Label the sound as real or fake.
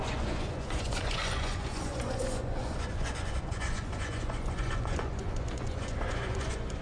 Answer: fake